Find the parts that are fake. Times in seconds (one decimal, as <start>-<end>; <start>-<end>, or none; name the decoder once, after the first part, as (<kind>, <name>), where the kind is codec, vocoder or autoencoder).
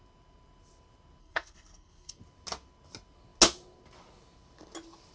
1.2-2.2 (codec, SNAC)